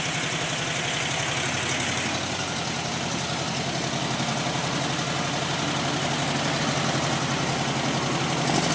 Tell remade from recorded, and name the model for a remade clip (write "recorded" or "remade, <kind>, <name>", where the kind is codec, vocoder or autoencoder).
recorded